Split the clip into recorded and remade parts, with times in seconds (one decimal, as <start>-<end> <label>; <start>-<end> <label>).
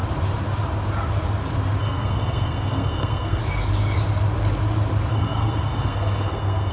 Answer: 0.0-1.8 recorded; 1.8-3.4 remade; 3.4-5.1 recorded; 5.1-6.7 remade